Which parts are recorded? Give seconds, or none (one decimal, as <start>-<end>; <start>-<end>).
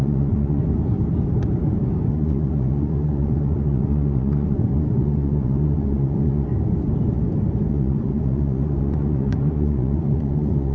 0.6-2.1; 6.5-7.7